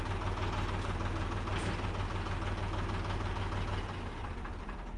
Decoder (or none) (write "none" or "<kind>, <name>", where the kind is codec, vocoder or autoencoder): none